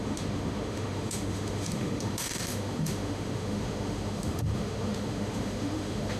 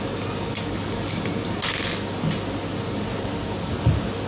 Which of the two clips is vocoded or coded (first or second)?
first